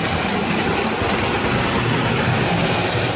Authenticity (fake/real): real